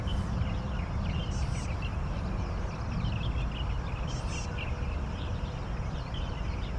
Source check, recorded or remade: recorded